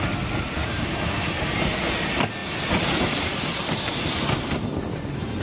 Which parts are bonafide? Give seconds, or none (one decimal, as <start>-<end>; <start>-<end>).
0.0-0.6; 1.3-5.4